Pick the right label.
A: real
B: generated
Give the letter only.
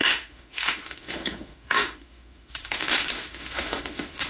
B